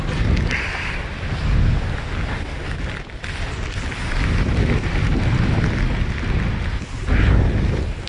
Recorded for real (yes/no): yes